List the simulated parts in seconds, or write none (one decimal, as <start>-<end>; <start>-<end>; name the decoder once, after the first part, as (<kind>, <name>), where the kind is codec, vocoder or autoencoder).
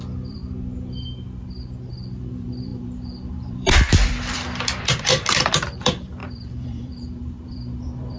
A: 0.0-0.4 (vocoder, BigVGAN v2); 1.9-8.2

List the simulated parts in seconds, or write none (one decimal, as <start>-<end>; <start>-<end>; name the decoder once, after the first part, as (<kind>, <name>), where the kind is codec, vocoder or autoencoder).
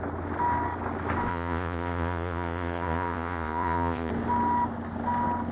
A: 1.3-4.1 (vocoder, Vocos)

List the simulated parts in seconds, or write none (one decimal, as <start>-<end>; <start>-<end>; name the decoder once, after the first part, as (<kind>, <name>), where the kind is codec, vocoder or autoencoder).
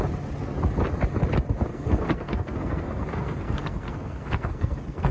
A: 1.7-5.1 (codec, SNAC)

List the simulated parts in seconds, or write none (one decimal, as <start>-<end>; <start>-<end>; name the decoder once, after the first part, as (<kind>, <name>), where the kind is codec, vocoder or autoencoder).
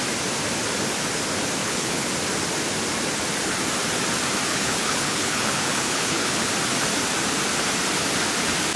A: 1.6-2.1 (codec, HILCodec); 4.5-6.5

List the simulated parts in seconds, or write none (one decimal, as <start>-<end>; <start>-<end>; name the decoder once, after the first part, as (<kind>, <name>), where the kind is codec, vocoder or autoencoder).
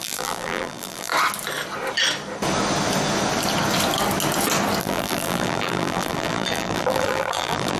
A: 0.0-1.1 (vocoder, BigVGAN v2); 4.8-7.8